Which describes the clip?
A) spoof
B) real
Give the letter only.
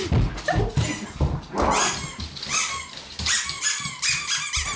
B